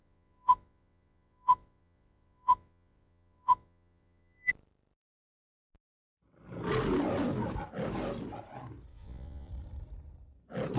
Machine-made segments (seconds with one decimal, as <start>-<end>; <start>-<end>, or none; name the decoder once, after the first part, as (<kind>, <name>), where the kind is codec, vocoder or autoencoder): 0.0-4.5 (vocoder, Vocos); 8.9-9.5